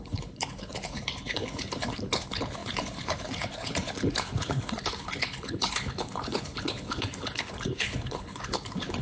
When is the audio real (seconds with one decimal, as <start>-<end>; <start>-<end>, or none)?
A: none